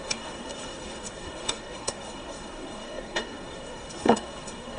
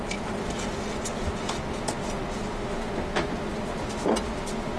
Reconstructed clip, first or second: first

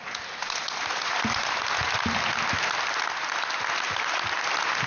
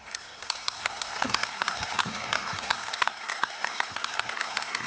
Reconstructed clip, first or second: second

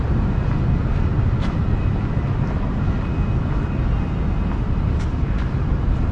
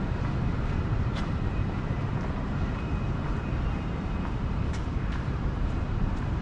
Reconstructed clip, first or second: second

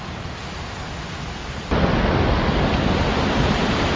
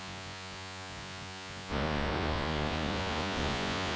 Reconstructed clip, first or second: second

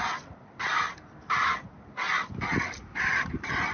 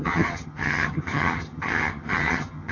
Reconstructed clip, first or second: second